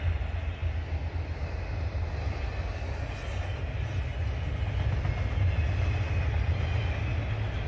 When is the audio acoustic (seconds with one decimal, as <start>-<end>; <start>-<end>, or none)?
0.0-7.7